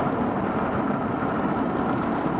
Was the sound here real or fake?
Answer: real